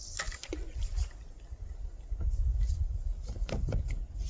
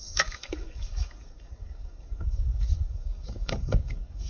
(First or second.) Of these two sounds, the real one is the first